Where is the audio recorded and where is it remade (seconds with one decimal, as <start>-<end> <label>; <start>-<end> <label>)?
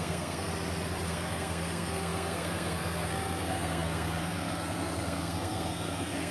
0.0-0.5 remade; 0.5-1.1 recorded; 1.1-6.3 remade